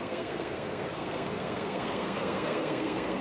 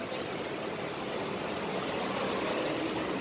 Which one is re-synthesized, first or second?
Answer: first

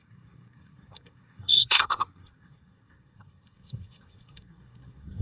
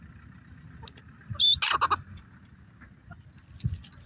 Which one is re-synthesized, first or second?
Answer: first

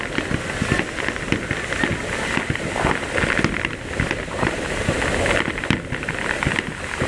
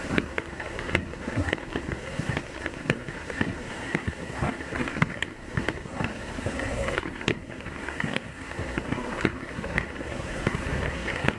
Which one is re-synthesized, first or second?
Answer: second